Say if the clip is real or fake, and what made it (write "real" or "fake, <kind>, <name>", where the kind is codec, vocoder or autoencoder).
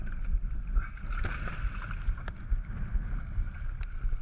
real